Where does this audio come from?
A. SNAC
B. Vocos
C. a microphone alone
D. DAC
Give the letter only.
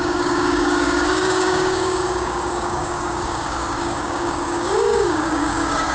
D